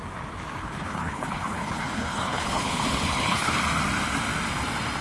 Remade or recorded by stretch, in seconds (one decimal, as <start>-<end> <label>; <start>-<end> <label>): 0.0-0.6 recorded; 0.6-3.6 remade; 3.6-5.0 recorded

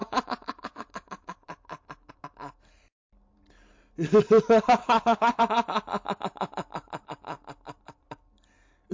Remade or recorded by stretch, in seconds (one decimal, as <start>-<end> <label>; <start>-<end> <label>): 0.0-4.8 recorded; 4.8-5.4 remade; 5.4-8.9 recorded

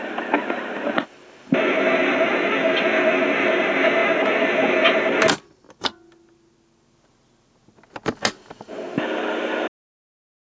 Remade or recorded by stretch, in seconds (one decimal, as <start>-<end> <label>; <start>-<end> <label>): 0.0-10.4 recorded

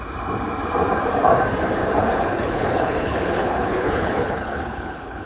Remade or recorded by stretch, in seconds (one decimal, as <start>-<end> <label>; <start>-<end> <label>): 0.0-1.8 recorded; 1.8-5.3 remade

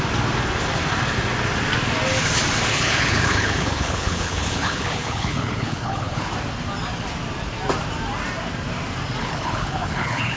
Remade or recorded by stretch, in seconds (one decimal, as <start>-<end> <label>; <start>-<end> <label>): 0.0-2.7 recorded; 2.7-6.3 remade; 6.3-9.2 recorded; 9.2-10.4 remade

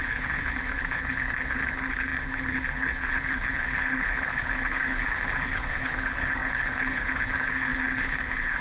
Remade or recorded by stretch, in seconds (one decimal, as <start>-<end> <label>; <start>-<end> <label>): 0.0-8.6 remade